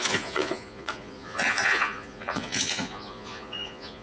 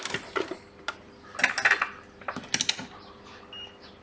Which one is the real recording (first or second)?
second